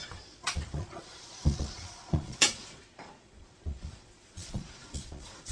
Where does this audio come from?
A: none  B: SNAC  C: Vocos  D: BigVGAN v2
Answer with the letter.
C